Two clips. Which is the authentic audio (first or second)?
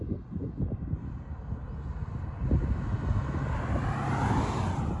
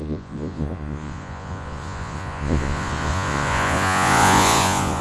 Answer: first